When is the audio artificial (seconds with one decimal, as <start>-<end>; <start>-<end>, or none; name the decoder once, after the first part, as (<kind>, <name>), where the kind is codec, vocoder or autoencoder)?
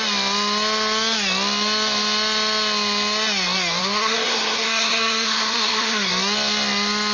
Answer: 3.8-6.1 (codec, SNAC)